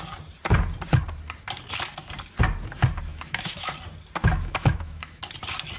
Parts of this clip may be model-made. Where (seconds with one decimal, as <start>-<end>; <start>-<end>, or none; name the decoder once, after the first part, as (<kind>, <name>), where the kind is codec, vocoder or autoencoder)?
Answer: 3.1-3.7 (autoencoder, DAC-VAE); 4.2-5.2